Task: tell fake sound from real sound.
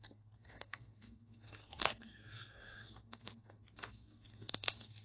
fake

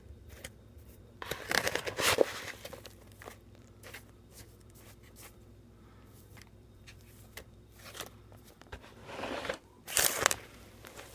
fake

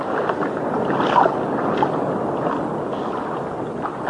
real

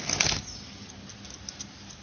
real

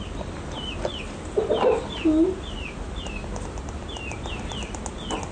real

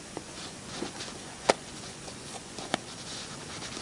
fake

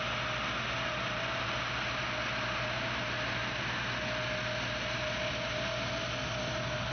real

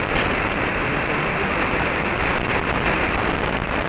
real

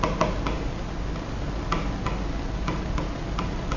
real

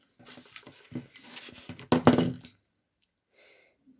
real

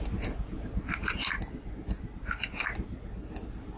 real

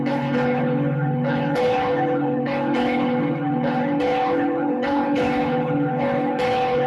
fake